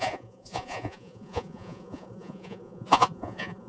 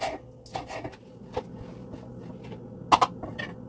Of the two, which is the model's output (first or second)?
first